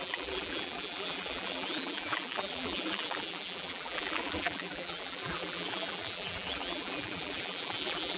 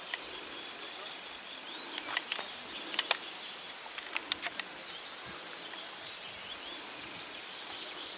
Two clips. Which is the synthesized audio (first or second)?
first